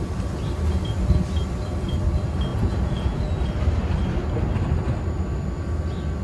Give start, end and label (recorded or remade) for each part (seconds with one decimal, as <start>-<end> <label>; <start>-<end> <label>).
0.0-2.5 recorded; 2.5-3.2 remade; 3.2-6.2 recorded

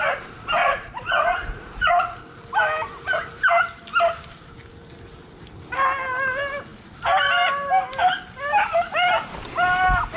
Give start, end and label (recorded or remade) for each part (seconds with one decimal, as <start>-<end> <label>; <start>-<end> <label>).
0.0-0.6 recorded; 0.6-2.2 remade; 2.2-10.2 recorded

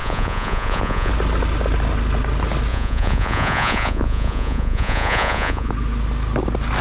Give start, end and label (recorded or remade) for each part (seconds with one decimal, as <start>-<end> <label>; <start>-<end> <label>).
0.0-1.1 remade; 1.1-2.7 recorded; 2.7-5.7 remade; 5.7-6.8 recorded